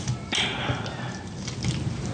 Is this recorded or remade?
recorded